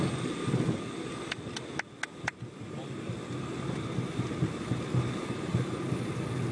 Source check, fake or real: real